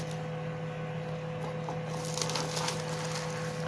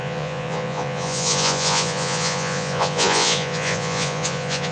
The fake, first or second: second